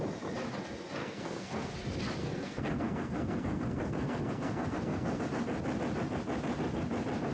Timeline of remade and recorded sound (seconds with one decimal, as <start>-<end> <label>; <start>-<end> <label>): 0.0-1.0 recorded; 1.0-1.7 remade; 1.7-2.2 recorded; 2.2-5.2 remade; 5.2-7.3 recorded